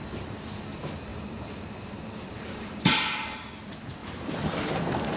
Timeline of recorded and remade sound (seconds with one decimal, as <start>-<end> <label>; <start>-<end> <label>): 0.0-0.6 remade; 0.6-1.1 recorded; 1.1-3.0 remade; 3.0-4.0 recorded; 4.0-4.8 remade; 4.8-5.2 recorded